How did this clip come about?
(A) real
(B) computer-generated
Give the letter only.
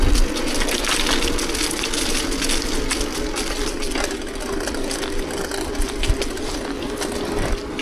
A